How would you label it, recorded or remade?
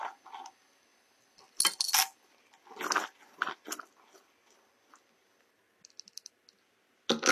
recorded